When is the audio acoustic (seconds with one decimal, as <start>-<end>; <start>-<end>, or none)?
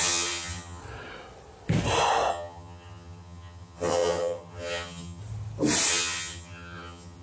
0.8-2.3; 5.2-5.9